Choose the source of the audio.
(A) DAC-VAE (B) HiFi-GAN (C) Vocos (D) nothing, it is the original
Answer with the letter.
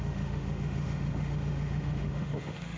A